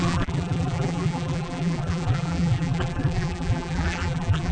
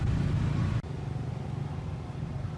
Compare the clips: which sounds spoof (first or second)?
first